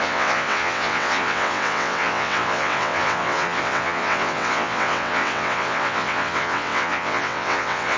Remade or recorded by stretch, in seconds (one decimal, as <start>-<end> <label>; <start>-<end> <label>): 0.0-8.0 remade